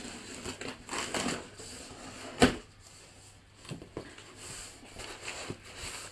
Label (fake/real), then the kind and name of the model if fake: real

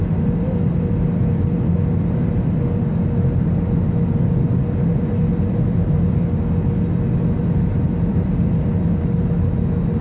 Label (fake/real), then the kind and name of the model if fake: real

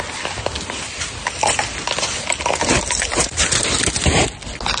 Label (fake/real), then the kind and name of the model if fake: real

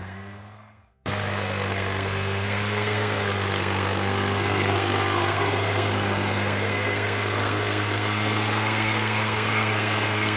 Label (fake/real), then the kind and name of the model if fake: fake, codec, SNAC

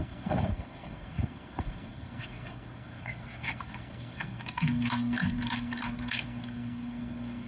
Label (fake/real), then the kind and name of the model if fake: fake, codec, SNAC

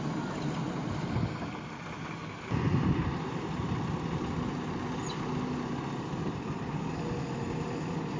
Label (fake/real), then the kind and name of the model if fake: real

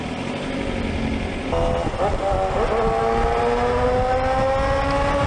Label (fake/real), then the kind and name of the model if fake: real